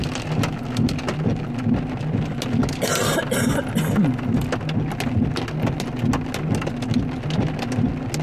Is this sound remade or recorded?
recorded